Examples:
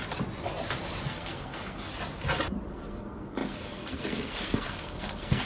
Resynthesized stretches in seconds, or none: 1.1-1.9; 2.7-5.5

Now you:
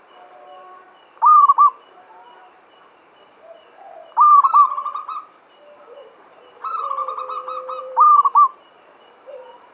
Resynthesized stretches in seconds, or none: 0.0-4.6; 5.2-7.0; 7.8-9.7

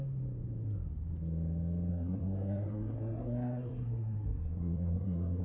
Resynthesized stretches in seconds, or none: 1.9-5.4

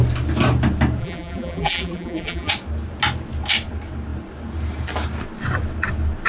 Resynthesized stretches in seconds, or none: 1.0-2.5

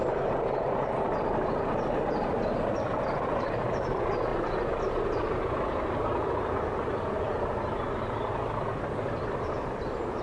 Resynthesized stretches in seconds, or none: none

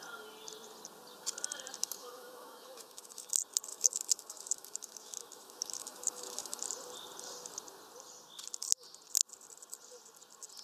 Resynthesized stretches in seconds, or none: 1.8-3.3; 3.7-6.6

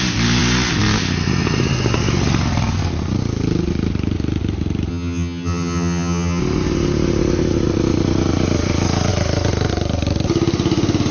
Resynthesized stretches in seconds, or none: 4.9-6.4